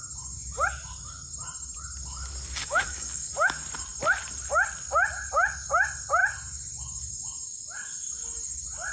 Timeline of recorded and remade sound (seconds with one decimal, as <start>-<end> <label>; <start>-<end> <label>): 0.0-2.6 recorded; 2.6-3.3 remade; 3.3-8.9 recorded